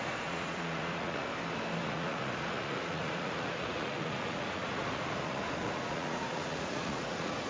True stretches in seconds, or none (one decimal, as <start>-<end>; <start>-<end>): 1.3-1.8